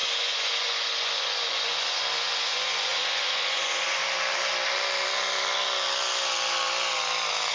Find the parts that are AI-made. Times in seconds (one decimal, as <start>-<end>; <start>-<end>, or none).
0.0-4.0